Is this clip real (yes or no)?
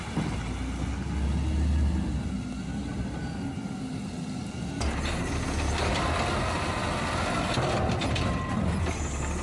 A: yes